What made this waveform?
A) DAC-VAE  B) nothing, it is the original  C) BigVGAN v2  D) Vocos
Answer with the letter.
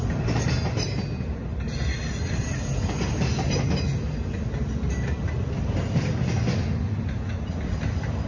B